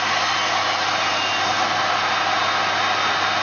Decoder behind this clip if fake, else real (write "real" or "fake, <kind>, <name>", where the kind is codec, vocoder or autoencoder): real